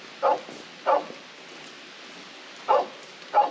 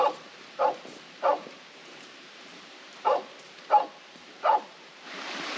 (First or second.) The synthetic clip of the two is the second